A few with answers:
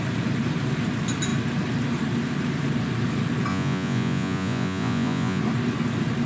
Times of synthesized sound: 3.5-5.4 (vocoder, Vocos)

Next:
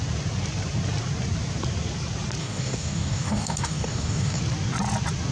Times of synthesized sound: 2.4-4.4 (codec, DAC)

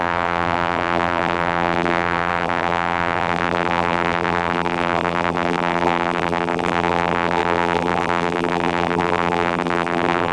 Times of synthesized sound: 0.0-10.3 (vocoder, BigVGAN v2)

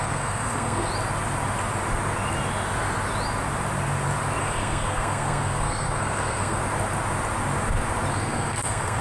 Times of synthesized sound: 0.0-0.9 (codec, SNAC); 4.4-6.6; 8.1-9.0

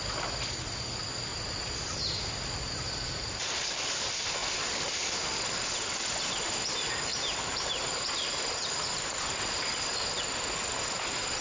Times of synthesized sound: 1.3-3.4 (vocoder, BigVGAN v2); 7.1-10.2

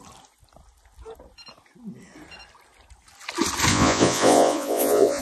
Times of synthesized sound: 3.7-5.2 (vocoder, Vocos)